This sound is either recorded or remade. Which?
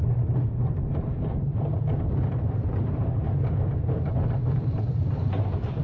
remade